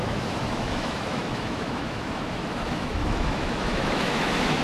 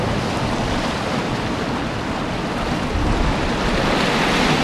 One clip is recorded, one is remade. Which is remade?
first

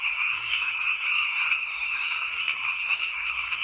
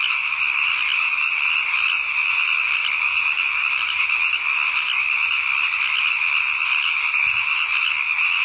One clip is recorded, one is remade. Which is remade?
first